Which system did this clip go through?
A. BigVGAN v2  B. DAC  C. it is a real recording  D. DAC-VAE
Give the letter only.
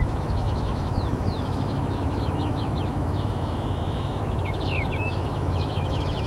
D